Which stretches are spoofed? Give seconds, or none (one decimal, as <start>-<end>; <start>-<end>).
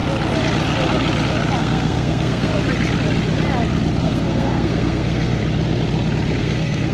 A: 1.6-2.5; 4.0-5.4; 6.4-6.9